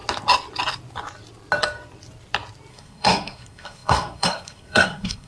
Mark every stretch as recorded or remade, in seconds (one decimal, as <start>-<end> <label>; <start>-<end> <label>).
0.0-2.7 recorded; 2.7-5.3 remade